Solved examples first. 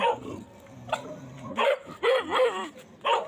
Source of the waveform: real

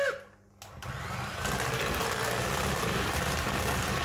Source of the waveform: real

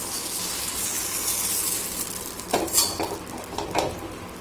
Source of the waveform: real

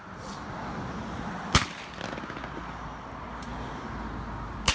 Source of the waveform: real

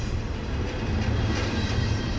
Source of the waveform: fake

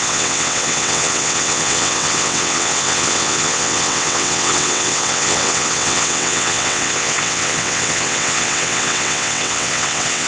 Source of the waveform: fake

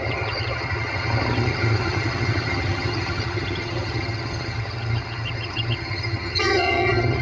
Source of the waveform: fake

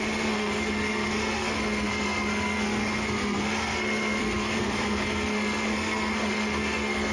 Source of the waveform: fake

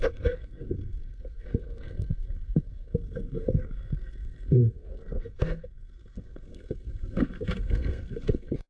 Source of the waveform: fake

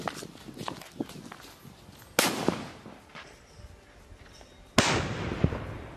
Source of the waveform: real